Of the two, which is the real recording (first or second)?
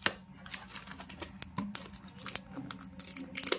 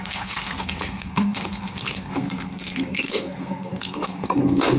first